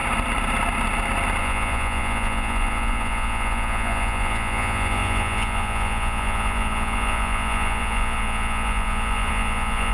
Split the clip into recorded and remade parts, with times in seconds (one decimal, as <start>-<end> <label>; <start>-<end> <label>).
0.0-1.4 recorded; 1.4-9.9 remade